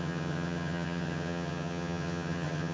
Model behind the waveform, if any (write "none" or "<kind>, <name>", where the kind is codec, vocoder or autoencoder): vocoder, HiFi-GAN